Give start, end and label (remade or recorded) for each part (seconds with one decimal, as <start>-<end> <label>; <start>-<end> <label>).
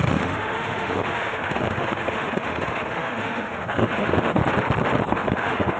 0.0-4.4 remade; 4.4-5.1 recorded; 5.1-5.8 remade